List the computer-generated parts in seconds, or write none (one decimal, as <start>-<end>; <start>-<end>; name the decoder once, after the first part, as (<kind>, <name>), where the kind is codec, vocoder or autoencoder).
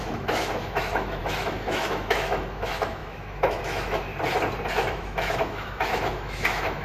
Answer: 0.0-4.1 (autoencoder, DAC-VAE); 4.7-6.8